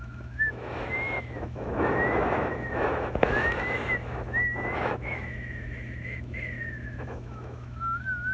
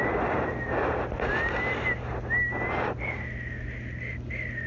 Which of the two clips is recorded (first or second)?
second